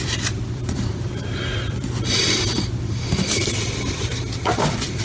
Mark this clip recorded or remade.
remade